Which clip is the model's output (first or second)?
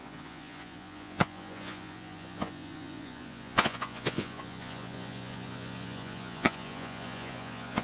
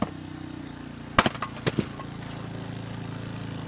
first